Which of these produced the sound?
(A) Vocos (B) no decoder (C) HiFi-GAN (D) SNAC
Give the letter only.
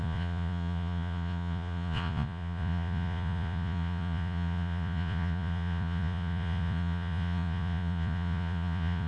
A